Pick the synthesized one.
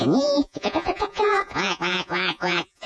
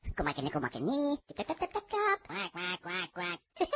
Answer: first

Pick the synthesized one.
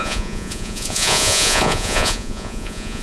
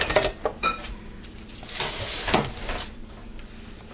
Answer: first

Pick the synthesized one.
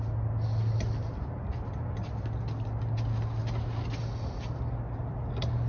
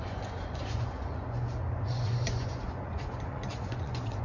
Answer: second